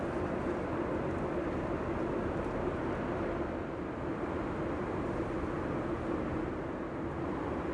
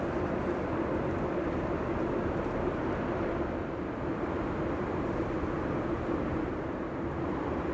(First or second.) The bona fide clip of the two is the first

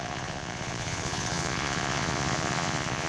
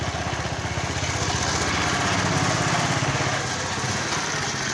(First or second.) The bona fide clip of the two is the second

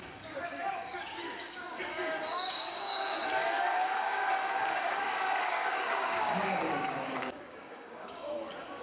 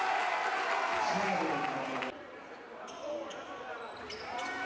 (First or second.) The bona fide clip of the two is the second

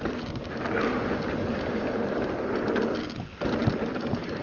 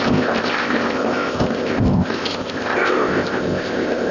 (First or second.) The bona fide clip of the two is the first